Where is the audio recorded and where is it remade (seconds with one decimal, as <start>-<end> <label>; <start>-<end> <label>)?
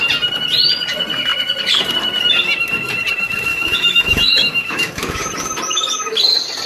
0.0-3.5 recorded; 3.5-5.3 remade; 5.3-6.7 recorded